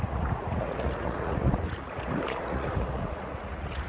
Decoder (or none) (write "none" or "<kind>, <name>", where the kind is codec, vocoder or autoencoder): vocoder, Vocos